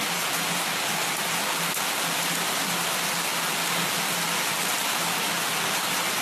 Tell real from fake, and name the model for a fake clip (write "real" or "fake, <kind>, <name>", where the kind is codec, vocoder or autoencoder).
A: real